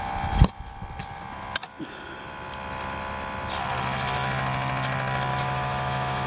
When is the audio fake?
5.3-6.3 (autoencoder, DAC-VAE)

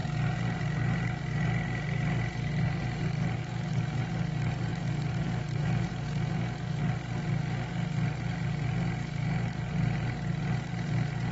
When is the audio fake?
3.4-4.0 (autoencoder, DAC-VAE); 4.7-6.8; 9.0-9.6

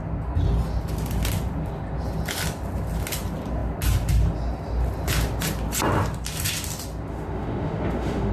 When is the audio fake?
7.1-8.3 (autoencoder, DAC-VAE)

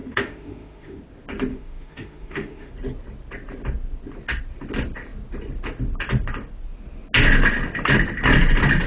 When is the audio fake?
0.0-1.0 (autoencoder, DAC-VAE); 1.5-2.7

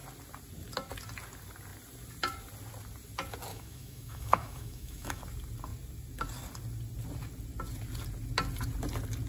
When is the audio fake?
3.5-5.2 (autoencoder, DAC-VAE)

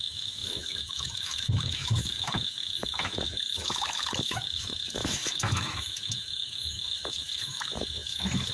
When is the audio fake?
0.0-8.5 (autoencoder, DAC-VAE)